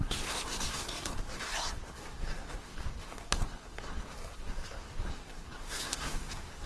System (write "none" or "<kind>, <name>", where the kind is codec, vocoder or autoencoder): codec, SNAC